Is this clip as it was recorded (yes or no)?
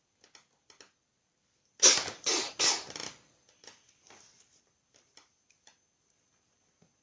yes